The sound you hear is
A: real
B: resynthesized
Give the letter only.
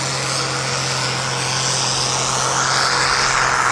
A